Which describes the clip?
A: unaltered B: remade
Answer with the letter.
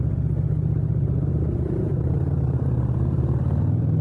B